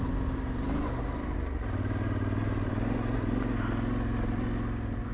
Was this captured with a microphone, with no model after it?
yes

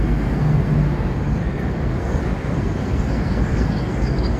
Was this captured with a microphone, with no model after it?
no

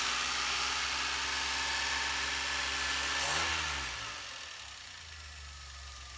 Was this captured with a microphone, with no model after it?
yes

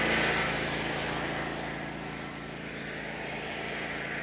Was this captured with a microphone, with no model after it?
yes